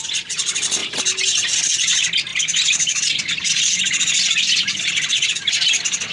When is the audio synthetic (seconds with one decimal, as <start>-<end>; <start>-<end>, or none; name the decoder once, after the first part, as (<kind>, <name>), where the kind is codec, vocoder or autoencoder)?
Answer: none